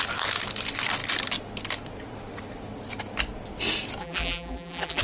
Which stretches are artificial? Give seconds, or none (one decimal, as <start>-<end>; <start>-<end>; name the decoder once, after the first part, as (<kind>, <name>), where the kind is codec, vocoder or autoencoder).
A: 4.0-5.0 (vocoder, BigVGAN v2)